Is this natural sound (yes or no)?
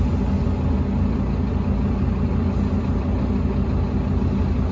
yes